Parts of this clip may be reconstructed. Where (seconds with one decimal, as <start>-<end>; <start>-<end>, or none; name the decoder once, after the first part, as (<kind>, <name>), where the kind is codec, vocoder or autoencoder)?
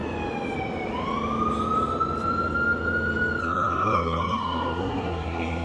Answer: 3.4-5.6 (codec, SNAC)